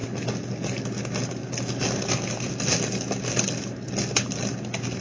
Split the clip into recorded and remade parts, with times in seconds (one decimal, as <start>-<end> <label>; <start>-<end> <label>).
0.0-5.0 recorded